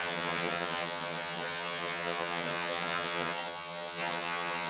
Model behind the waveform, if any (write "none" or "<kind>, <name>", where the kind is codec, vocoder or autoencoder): vocoder, HiFi-GAN